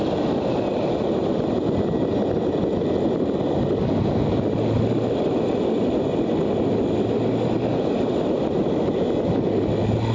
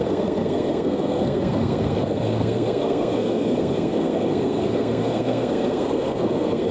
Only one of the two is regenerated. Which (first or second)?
second